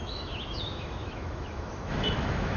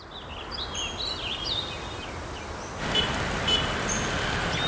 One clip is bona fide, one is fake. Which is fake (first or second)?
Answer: first